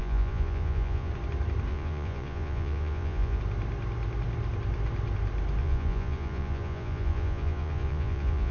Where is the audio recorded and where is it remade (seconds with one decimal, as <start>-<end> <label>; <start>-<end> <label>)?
0.0-1.1 remade; 1.1-1.7 recorded; 1.7-3.4 remade; 3.4-5.6 recorded; 5.6-8.5 remade